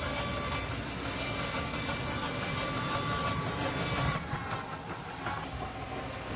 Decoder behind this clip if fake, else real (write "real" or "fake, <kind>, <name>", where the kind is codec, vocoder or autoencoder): real